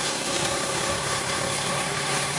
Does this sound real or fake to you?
fake